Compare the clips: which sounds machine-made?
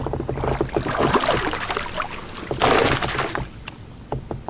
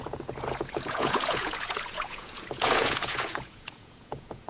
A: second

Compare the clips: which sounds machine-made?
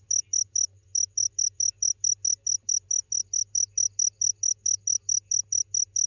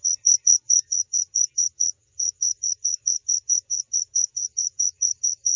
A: second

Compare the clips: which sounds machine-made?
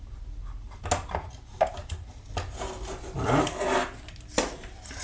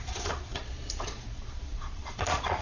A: second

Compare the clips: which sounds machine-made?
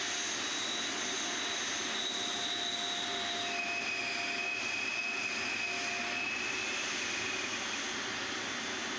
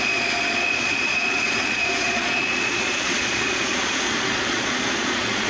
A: second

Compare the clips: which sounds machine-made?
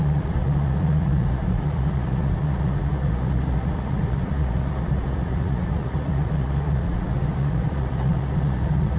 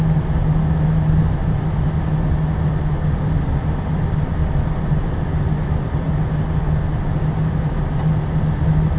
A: first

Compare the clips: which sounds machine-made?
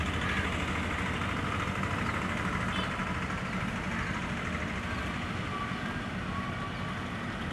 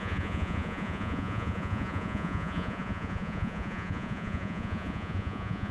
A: second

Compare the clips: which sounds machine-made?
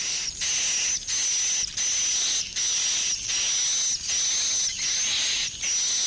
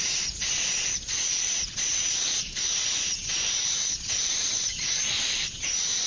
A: second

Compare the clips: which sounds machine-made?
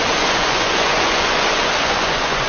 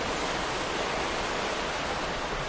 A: first